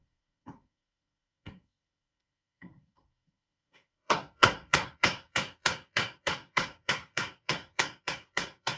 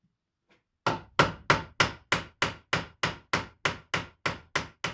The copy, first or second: first